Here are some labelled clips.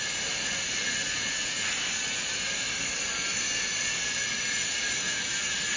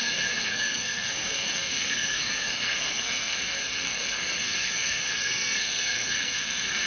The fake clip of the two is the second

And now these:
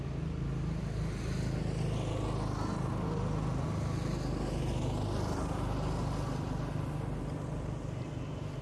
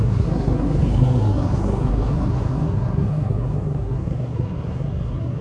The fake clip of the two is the second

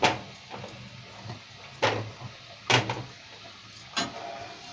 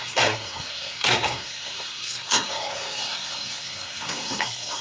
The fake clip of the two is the second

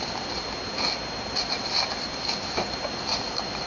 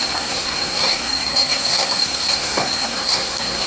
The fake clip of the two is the second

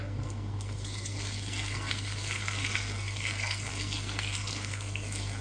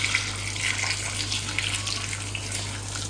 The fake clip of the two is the first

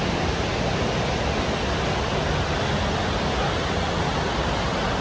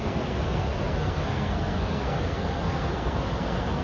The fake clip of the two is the second